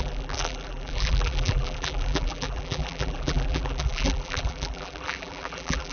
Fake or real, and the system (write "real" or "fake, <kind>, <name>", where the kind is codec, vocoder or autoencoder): fake, vocoder, BigVGAN v2